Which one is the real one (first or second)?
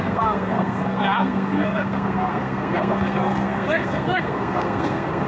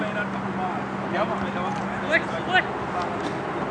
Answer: second